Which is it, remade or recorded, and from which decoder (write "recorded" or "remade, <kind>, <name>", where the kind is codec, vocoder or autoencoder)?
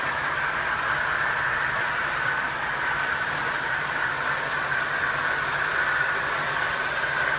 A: recorded